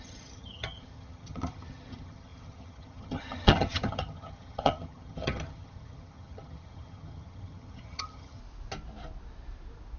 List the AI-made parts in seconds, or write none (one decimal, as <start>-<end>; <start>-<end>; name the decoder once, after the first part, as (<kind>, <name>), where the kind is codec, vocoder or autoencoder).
0.0-8.4 (vocoder, HiFi-GAN)